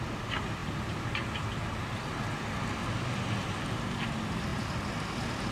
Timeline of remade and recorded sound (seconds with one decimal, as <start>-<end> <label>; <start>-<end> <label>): 0.0-5.5 recorded